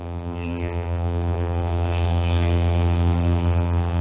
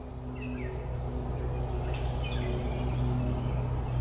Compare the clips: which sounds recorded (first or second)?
second